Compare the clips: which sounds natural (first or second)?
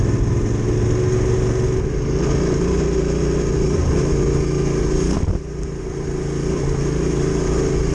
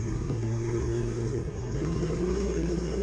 first